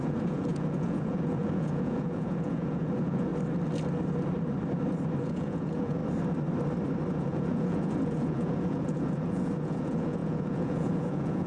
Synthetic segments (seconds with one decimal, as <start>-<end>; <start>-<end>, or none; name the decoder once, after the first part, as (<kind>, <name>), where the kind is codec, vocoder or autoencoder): 0.0-3.3 (vocoder, Vocos); 5.2-6.0; 7.1-11.5